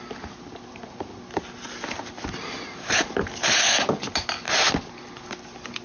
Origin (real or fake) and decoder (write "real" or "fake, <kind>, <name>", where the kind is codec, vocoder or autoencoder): real